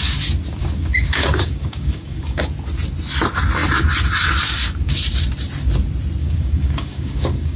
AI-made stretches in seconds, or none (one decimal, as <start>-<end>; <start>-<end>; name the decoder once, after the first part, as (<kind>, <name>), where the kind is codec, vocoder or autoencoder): 0.6-2.4 (codec, DAC); 6.2-7.6